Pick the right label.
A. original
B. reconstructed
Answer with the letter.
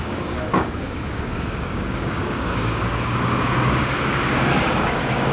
B